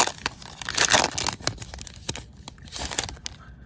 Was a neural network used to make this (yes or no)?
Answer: no